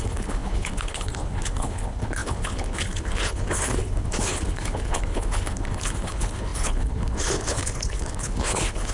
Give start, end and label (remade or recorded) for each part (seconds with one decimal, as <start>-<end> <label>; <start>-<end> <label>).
0.0-8.9 remade